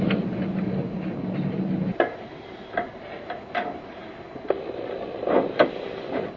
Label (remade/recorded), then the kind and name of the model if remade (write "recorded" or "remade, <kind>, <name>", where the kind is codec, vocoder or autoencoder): recorded